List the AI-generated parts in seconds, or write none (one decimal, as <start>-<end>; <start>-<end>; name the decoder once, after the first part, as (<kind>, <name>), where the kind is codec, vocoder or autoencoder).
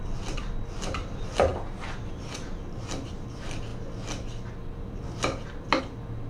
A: none